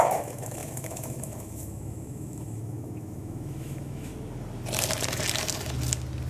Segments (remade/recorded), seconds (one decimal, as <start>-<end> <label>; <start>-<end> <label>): 0.0-4.1 remade; 4.1-6.3 recorded